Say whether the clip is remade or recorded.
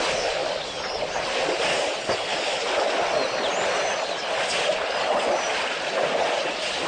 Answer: recorded